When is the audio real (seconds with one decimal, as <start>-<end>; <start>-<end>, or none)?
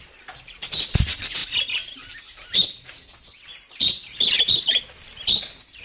0.0-5.8